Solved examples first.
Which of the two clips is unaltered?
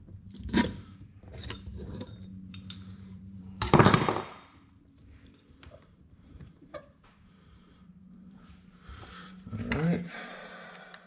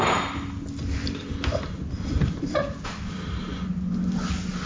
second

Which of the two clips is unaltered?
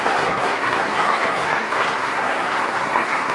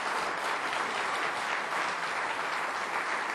second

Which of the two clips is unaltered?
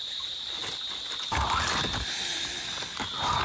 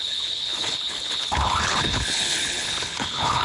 first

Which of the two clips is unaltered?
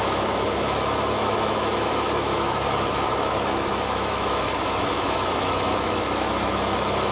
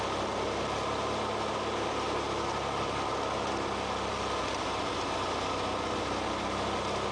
second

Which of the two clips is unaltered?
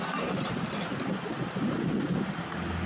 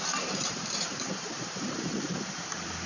first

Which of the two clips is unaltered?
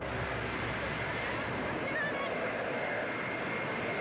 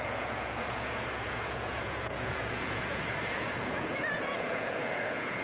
first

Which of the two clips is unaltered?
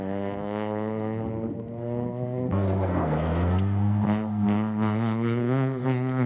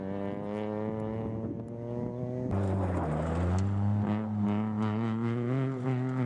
second